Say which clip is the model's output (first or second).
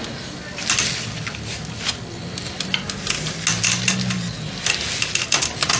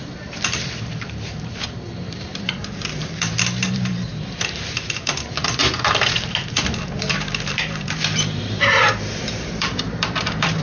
second